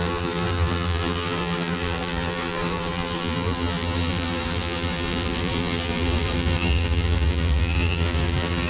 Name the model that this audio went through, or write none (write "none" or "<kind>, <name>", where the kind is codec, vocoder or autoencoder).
vocoder, BigVGAN v2